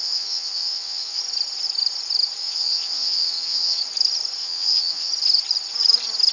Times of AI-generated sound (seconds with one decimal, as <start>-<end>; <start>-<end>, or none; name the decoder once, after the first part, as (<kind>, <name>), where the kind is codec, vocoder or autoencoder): 0.0-1.2 (vocoder, WaveNeXt); 2.4-3.8; 4.4-5.1